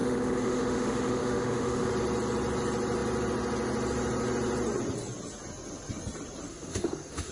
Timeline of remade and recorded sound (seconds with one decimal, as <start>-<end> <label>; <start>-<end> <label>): 0.0-1.9 remade; 1.9-6.5 recorded; 6.5-7.3 remade